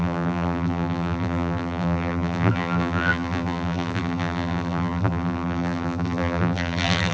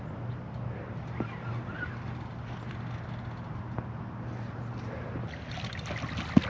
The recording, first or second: second